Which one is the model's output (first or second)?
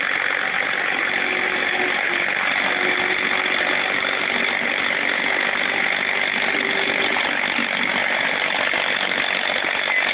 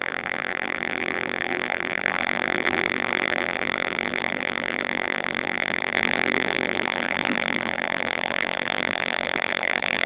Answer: second